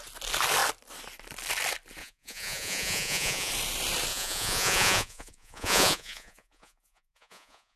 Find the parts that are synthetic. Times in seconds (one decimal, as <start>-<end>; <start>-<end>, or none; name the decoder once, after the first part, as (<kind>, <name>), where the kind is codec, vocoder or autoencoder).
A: 2.0-3.5 (vocoder, Vocos); 4.1-7.8